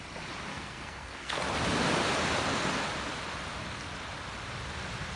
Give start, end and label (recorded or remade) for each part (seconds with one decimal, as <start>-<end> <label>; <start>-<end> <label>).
0.0-0.5 recorded; 0.5-1.4 remade; 1.4-5.2 recorded